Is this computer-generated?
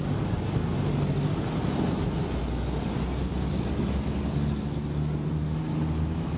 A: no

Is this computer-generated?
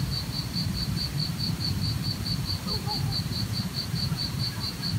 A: yes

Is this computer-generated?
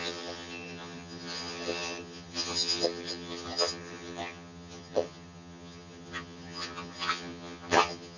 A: yes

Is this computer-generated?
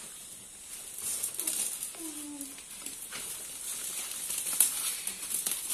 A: no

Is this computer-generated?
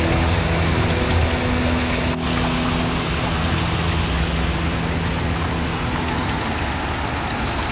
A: no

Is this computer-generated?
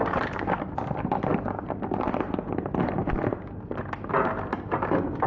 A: no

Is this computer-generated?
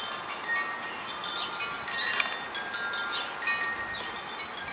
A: no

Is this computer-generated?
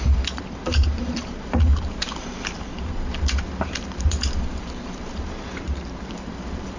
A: yes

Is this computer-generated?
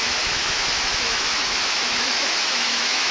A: yes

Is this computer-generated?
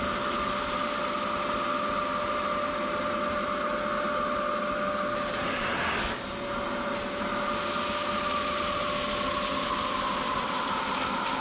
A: no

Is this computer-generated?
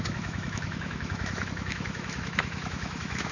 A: yes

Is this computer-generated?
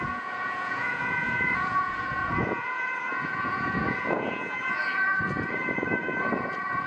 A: yes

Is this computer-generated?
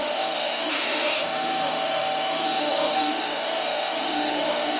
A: yes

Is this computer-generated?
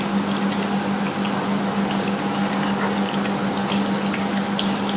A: no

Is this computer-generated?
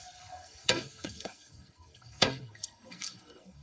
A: yes